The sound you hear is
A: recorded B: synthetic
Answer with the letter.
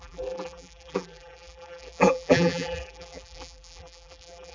B